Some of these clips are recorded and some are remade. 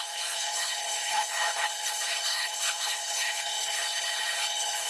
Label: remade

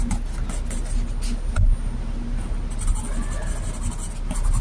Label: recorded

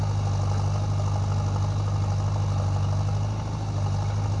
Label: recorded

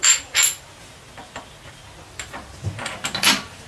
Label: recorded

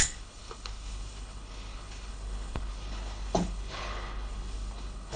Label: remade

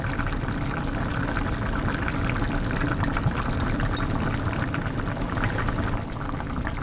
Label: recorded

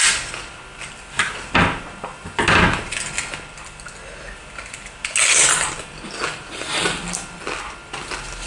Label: recorded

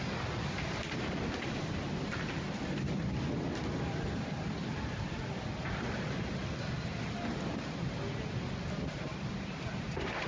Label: recorded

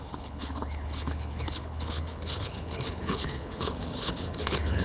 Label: remade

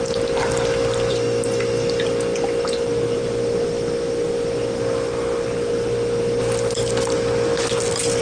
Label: recorded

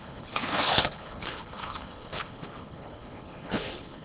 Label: remade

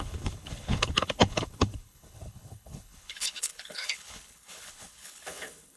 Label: remade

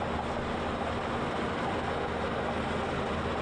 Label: recorded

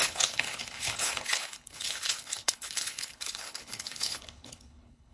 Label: remade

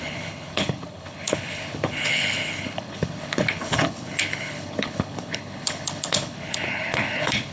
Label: remade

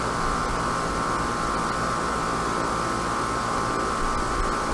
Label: recorded